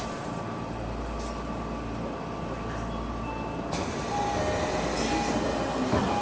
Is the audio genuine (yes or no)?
yes